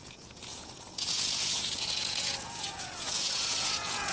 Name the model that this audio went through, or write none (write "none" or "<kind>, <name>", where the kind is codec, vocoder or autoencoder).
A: vocoder, Vocos